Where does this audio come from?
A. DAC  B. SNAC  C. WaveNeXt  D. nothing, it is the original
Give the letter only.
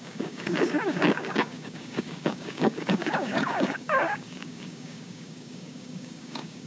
A